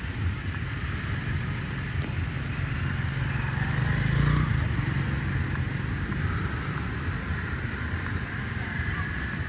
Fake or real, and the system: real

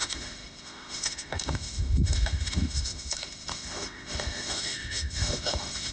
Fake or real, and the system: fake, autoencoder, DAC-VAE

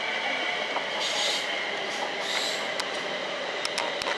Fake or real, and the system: real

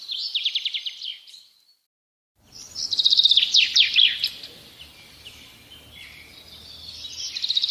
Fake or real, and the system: fake, vocoder, BigVGAN v2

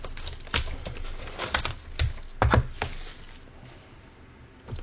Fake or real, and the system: real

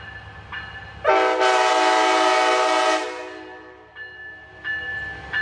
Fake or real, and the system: real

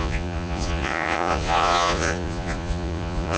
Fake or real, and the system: fake, vocoder, Vocos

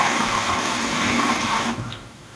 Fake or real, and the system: fake, codec, DAC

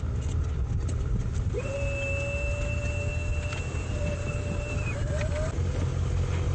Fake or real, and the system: real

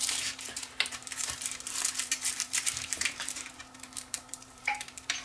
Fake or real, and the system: fake, vocoder, BigVGAN v2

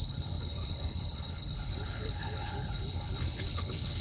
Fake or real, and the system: fake, codec, HILCodec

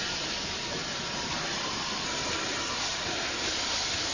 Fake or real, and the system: fake, vocoder, BigVGAN v2